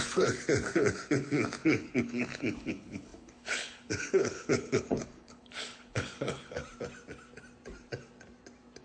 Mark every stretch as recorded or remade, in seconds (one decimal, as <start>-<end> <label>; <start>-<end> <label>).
0.0-6.6 remade; 6.6-8.8 recorded